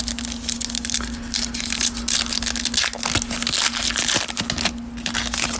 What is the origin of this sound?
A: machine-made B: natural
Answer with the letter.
B